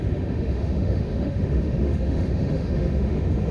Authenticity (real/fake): fake